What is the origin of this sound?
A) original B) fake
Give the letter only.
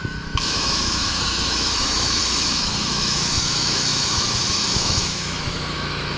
B